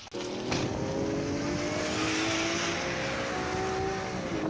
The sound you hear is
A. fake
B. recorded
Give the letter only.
B